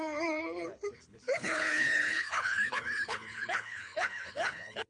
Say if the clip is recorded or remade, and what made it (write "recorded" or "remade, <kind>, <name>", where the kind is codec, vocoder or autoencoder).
remade, codec, HILCodec